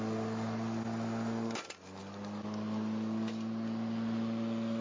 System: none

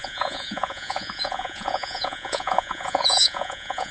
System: vocoder, Vocos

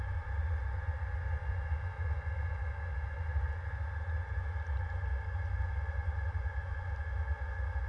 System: none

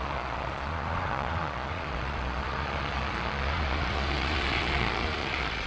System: vocoder, Vocos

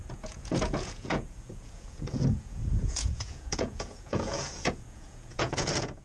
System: vocoder, Vocos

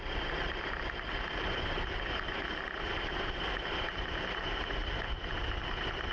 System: none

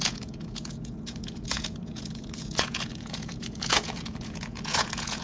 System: vocoder, Vocos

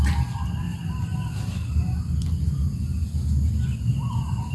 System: none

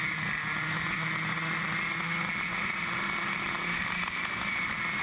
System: none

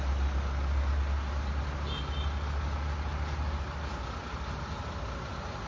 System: none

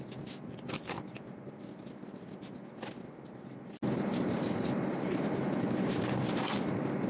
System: none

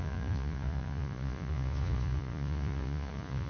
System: vocoder, Vocos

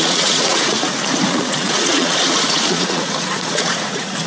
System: vocoder, Vocos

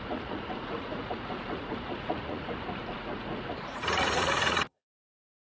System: vocoder, Vocos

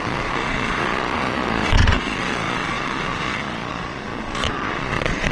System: vocoder, Vocos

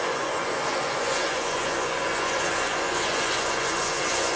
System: vocoder, Vocos